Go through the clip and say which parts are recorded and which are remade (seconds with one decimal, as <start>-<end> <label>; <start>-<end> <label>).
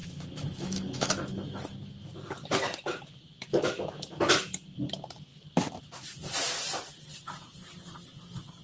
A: 0.0-1.6 remade; 1.6-3.5 recorded; 3.5-4.3 remade; 4.3-8.6 recorded